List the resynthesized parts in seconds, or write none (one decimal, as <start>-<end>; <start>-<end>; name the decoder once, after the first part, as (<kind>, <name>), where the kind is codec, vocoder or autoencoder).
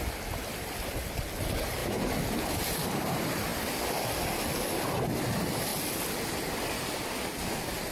3.5-4.9 (vocoder, BigVGAN v2)